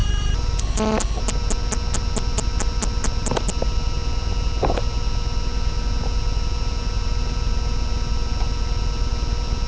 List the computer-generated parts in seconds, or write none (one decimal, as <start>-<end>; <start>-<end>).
0.0-1.0